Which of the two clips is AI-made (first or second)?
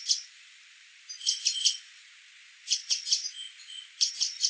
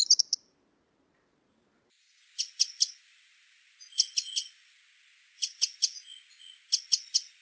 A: first